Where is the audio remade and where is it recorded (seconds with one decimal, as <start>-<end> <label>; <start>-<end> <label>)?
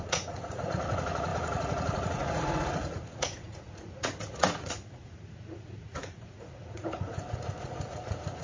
0.0-8.4 remade